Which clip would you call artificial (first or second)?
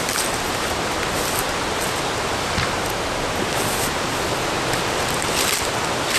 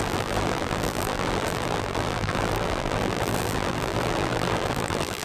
second